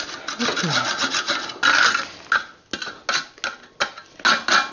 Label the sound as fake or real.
real